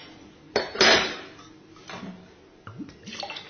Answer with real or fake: real